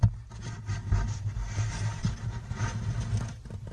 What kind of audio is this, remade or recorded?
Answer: recorded